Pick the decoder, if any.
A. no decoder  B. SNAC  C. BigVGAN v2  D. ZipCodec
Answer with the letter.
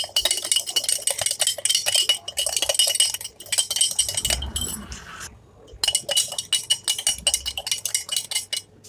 A